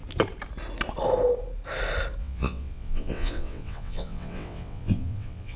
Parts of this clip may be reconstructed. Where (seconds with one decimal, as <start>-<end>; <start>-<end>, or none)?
2.2-5.6